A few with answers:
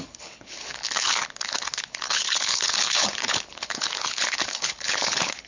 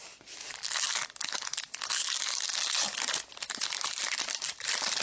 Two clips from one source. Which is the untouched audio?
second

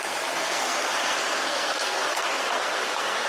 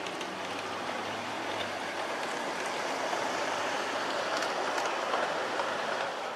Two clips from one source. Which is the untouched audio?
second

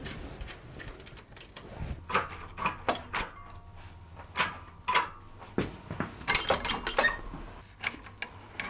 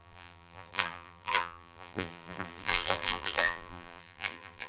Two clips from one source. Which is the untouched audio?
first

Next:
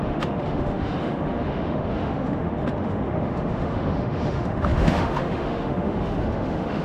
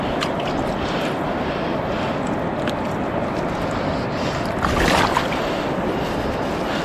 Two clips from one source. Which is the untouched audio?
second